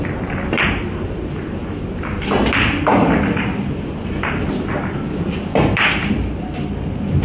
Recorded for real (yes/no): yes